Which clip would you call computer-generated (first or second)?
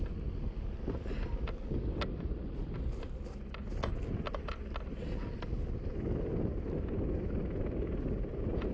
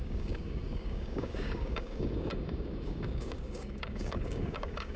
second